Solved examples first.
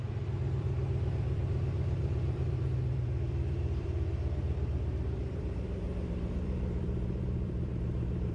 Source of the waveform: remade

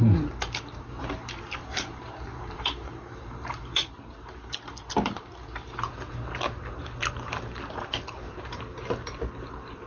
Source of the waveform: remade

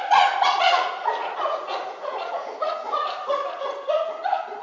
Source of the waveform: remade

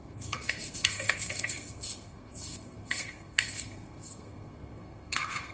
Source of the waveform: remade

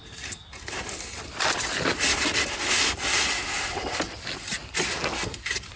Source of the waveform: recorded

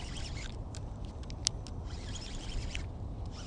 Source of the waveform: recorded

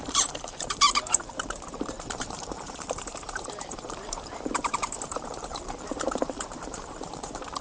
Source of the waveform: remade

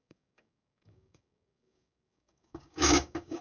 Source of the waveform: remade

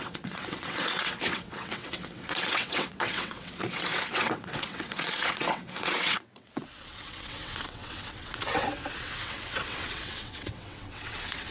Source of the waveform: remade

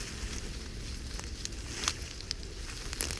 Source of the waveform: recorded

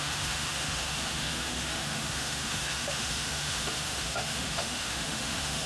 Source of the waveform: remade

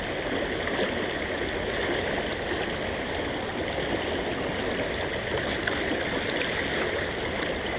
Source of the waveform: recorded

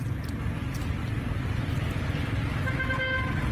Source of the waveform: recorded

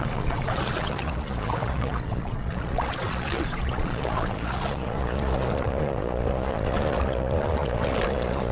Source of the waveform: remade